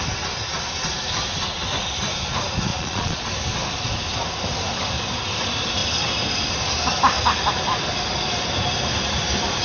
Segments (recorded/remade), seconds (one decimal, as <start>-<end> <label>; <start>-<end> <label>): 0.0-2.7 recorded; 2.7-3.3 remade; 3.3-9.6 recorded